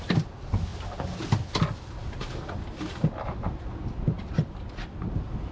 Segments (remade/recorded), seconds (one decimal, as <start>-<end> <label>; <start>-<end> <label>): 0.0-5.5 recorded